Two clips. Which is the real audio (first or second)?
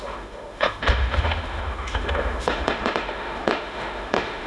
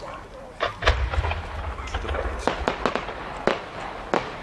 second